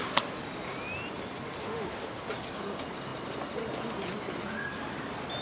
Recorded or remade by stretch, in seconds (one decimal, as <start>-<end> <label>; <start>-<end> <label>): 0.0-1.6 recorded; 1.6-2.2 remade; 2.2-5.4 recorded